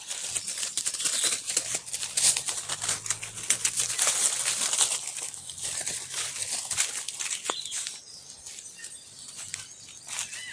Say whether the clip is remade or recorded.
recorded